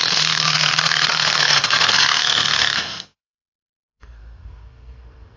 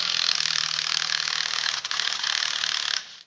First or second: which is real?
second